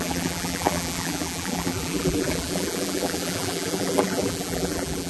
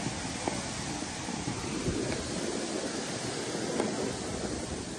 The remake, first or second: first